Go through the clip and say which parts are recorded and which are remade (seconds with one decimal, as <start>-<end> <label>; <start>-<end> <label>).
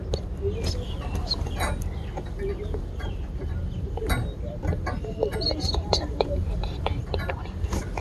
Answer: 0.0-2.5 recorded; 2.5-7.3 remade; 7.3-8.0 recorded